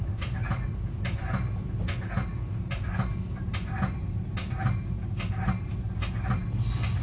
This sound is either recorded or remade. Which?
recorded